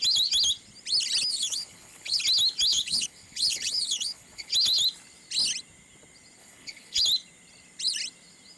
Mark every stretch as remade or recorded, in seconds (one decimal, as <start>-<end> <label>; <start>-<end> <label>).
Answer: 0.0-1.3 recorded; 1.3-2.2 remade; 2.2-2.7 recorded; 2.7-4.5 remade; 4.5-6.4 recorded; 6.4-7.0 remade; 7.0-8.6 recorded